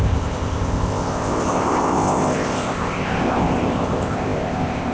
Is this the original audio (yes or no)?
no